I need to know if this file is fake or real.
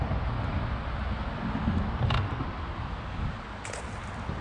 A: real